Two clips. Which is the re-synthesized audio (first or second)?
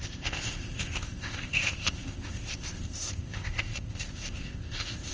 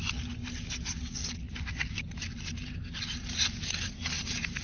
first